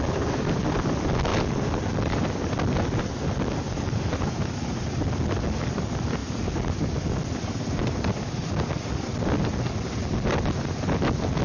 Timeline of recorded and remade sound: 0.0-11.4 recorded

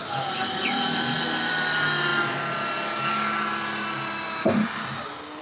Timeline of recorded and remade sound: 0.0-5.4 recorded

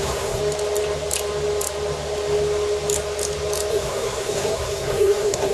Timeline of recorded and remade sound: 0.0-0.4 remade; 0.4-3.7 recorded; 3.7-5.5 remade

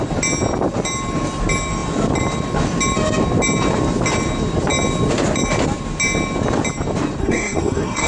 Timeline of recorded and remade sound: 0.0-7.2 recorded; 7.2-8.1 remade

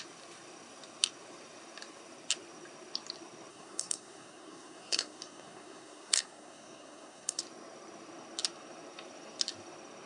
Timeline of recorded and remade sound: 0.0-3.5 recorded; 3.5-7.4 remade; 7.4-10.1 recorded

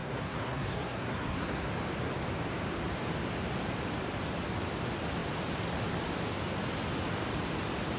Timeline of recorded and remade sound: 0.0-1.7 remade; 1.7-8.0 recorded

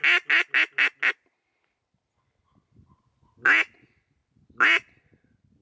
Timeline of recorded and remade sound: 0.0-5.6 recorded

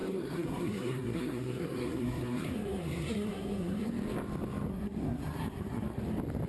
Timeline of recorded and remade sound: 0.0-3.9 remade; 3.9-4.7 recorded; 4.7-6.0 remade; 6.0-6.5 recorded